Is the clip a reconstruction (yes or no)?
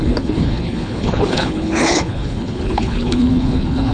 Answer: yes